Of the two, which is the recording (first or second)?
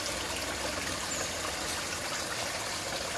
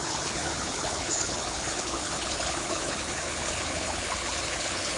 first